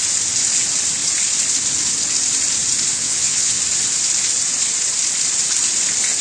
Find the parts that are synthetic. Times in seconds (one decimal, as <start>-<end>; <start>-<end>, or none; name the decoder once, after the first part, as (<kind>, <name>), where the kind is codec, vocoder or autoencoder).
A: 2.9-3.6 (vocoder, WaveNeXt)